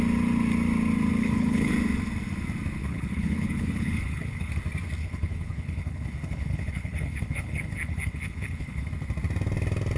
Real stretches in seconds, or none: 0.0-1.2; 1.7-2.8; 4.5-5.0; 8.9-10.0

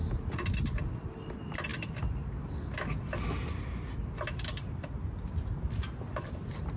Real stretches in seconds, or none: 0.0-6.8

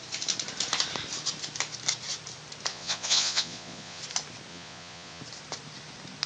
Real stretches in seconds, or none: 0.0-2.7; 4.0-4.5; 5.2-6.3

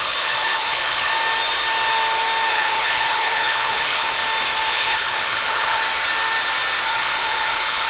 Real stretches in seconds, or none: 1.1-2.5; 4.2-4.7; 5.8-6.9